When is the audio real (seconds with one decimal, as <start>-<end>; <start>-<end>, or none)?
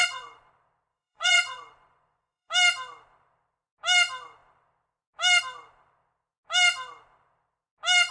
0.5-0.9; 2.5-8.1